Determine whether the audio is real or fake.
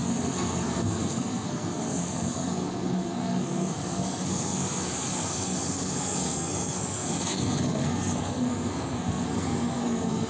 fake